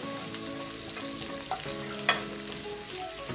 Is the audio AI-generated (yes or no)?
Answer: no